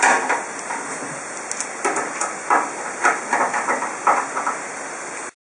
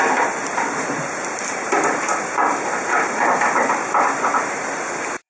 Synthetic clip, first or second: second